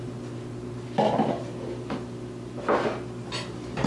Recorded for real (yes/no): yes